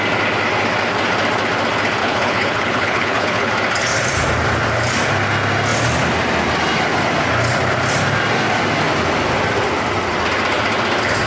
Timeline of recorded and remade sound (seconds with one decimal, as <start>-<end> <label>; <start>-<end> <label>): 0.0-2.0 recorded; 2.0-3.5 remade; 3.5-11.3 recorded